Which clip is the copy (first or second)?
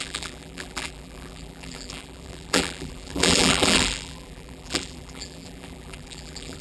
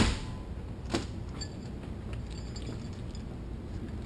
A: first